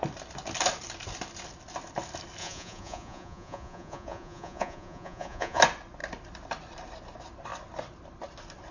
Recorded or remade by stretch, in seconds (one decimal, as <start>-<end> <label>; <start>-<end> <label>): 0.0-2.4 recorded; 2.4-5.6 remade; 5.6-8.7 recorded